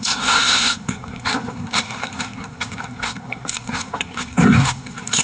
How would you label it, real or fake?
fake